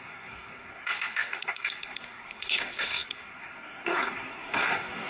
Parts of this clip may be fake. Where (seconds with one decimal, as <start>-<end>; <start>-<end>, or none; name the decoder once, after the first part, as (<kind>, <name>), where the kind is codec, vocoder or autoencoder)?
0.0-5.1 (codec, SNAC)